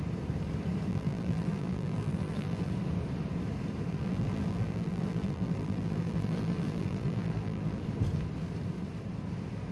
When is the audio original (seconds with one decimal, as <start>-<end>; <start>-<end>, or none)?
0.0-0.9; 2.7-3.9; 7.8-9.7